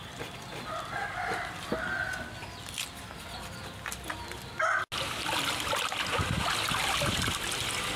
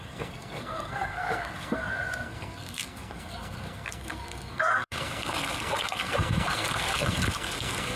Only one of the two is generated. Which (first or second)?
second